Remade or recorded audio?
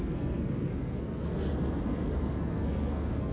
remade